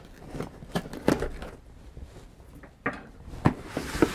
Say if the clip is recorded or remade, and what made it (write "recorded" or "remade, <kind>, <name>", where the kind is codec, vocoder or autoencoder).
recorded